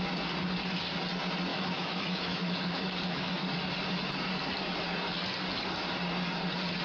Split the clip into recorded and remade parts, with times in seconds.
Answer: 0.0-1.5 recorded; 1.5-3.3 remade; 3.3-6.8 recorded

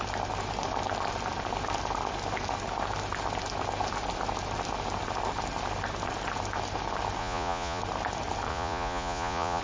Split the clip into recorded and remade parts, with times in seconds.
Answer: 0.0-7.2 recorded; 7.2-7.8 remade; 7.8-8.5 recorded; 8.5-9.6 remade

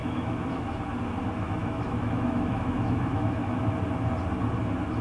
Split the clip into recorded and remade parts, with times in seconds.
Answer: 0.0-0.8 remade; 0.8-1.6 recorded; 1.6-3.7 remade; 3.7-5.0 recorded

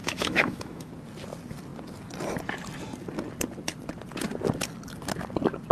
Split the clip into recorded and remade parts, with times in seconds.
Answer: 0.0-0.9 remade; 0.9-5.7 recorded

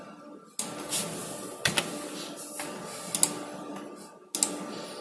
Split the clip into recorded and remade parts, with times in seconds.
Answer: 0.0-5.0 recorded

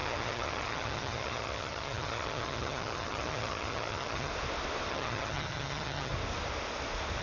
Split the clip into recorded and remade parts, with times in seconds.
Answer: 0.0-4.3 remade; 4.3-4.9 recorded; 4.9-6.1 remade; 6.1-7.2 recorded

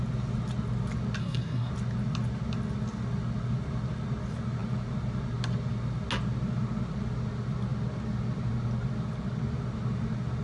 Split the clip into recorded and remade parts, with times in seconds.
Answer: 0.0-1.2 recorded; 1.2-1.7 remade; 1.7-10.4 recorded

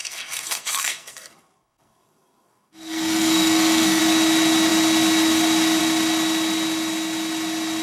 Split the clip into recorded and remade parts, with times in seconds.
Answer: 0.0-4.0 remade; 4.0-7.8 recorded